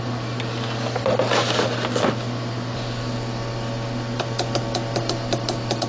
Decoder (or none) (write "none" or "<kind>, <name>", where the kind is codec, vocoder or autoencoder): none